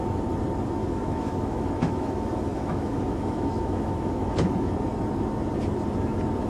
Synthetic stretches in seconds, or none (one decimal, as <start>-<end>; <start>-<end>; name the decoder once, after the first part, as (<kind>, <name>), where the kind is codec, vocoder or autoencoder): 0.8-4.7 (autoencoder, DAC-VAE)